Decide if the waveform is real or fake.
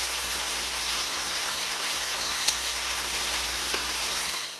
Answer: fake